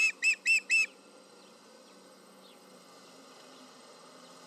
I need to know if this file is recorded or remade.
recorded